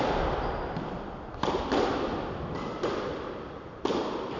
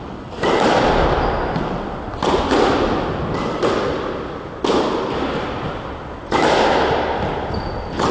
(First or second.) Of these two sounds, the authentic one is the second